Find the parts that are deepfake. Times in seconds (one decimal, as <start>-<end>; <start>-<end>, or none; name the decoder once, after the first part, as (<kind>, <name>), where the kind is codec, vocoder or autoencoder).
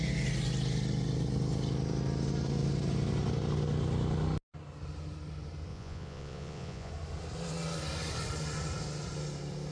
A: 5.7-6.9 (vocoder, Vocos)